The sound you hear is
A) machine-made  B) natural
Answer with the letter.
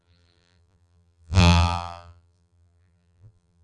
A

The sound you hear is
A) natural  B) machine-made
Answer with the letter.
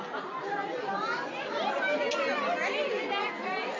A